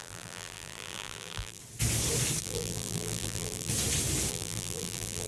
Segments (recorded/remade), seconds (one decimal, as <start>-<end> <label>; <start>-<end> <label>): 0.0-1.6 remade; 1.6-2.4 recorded; 2.4-3.7 remade; 3.7-4.3 recorded; 4.3-5.3 remade